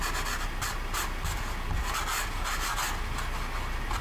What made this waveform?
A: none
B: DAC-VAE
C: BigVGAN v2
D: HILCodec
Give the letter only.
A